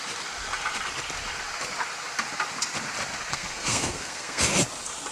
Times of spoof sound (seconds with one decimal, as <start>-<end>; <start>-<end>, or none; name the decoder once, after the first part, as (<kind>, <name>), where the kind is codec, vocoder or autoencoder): 3.3-4.4 (codec, SNAC)